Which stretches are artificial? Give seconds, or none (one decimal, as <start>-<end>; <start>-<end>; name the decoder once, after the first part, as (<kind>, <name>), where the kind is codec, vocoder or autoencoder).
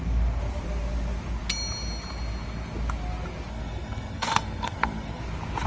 3.5-5.2 (codec, SNAC)